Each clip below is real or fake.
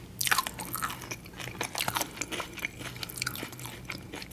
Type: real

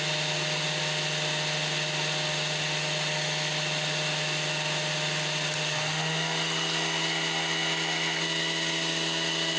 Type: real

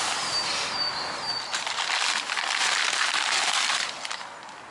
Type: real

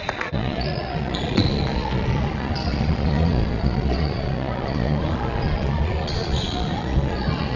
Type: fake